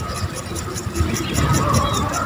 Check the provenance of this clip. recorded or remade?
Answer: recorded